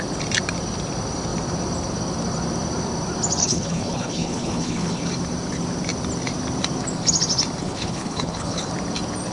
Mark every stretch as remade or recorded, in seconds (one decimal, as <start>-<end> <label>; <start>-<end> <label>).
0.0-3.4 recorded; 3.4-5.0 remade; 5.0-7.6 recorded; 7.6-8.7 remade; 8.7-9.3 recorded